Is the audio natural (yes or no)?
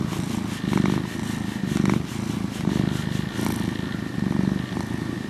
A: yes